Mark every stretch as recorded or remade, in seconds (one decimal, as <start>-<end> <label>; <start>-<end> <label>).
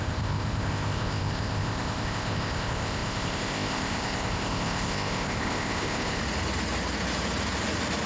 0.0-6.2 remade; 6.2-8.1 recorded